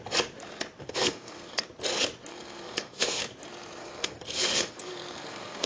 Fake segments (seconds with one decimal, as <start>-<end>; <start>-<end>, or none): 0.8-1.6; 2.3-3.2; 3.8-5.7